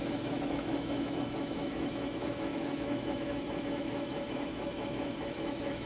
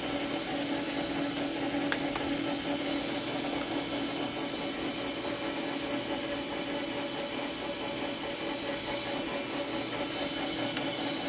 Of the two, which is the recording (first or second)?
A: second